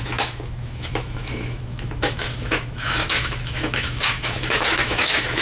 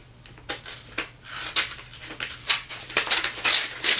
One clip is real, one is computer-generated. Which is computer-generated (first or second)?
first